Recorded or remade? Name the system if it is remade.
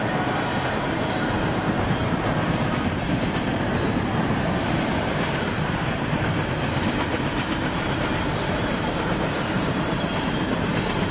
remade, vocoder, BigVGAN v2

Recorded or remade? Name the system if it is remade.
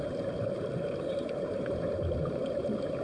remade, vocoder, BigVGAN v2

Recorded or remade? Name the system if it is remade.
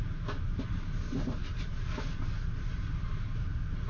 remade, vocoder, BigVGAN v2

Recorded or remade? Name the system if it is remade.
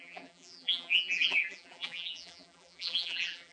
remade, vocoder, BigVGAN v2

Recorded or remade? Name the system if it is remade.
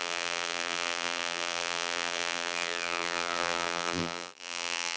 remade, vocoder, BigVGAN v2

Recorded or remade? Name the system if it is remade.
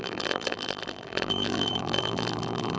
remade, vocoder, BigVGAN v2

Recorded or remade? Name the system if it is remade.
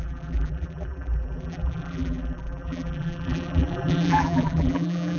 remade, vocoder, BigVGAN v2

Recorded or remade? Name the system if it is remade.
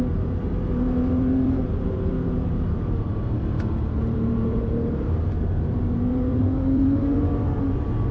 remade, vocoder, BigVGAN v2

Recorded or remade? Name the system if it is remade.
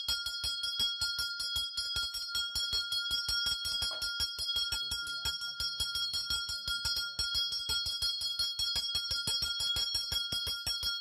recorded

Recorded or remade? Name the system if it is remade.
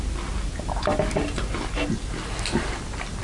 recorded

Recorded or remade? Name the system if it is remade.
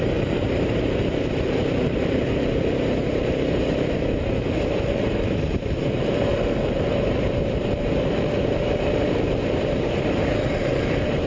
remade, vocoder, BigVGAN v2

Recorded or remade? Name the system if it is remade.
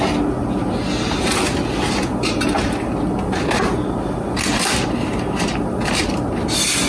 recorded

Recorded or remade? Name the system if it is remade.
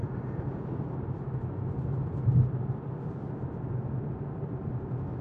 recorded